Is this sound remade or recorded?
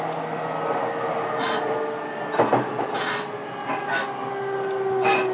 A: recorded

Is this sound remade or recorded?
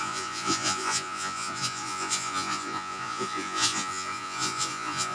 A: remade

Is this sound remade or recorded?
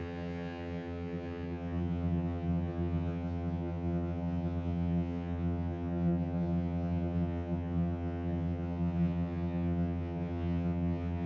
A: remade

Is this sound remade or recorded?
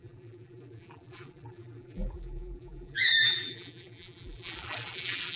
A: remade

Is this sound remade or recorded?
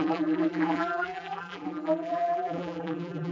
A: remade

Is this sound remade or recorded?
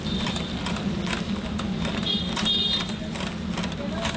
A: recorded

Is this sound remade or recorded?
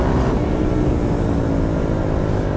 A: recorded